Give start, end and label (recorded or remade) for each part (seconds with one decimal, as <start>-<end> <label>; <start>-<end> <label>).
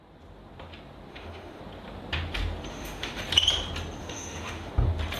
0.0-1.1 recorded; 1.1-1.6 remade; 1.6-2.7 recorded; 2.7-3.2 remade; 3.2-4.0 recorded; 4.0-4.7 remade; 4.7-5.2 recorded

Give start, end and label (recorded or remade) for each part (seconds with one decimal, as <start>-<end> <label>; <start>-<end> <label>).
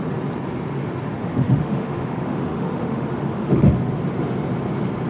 0.0-1.2 recorded; 1.2-3.7 remade; 3.7-5.1 recorded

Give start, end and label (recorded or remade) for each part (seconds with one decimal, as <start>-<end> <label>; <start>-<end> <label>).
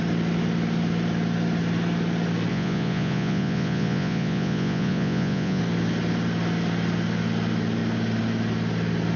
0.0-2.5 recorded; 2.5-5.6 remade; 5.6-9.2 recorded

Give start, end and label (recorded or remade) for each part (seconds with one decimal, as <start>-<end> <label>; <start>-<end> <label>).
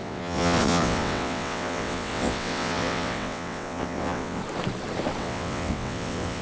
0.0-4.4 remade; 4.4-5.2 recorded; 5.2-6.4 remade